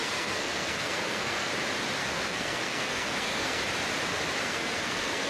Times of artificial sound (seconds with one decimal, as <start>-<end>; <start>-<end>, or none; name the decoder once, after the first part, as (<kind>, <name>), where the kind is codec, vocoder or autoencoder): 0.0-1.5 (codec, SNAC); 2.0-3.6; 4.4-5.3

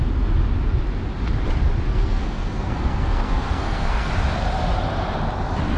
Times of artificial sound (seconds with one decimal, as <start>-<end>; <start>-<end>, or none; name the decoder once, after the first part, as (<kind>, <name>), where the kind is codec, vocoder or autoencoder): 1.9-4.1 (codec, SNAC)